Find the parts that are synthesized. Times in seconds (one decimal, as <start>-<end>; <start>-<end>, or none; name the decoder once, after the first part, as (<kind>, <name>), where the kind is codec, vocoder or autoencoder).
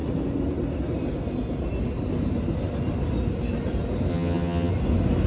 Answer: 4.1-4.7 (vocoder, HiFi-GAN)